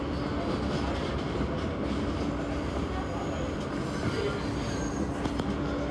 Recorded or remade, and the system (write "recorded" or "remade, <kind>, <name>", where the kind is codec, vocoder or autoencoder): recorded